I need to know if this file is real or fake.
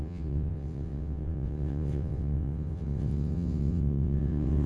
fake